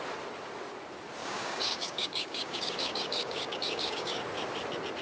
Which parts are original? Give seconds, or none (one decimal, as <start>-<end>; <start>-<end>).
0.0-1.2; 4.2-5.0